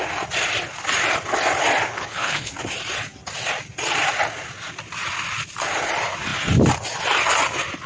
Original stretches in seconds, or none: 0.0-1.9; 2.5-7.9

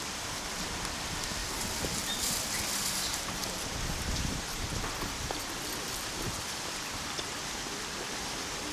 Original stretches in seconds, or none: 1.4-2.0

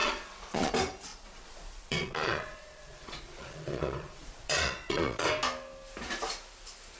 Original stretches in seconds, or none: 0.7-1.1; 5.3-7.0

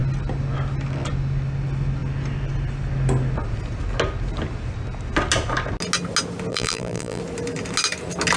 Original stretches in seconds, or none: 0.0-6.5; 7.2-8.4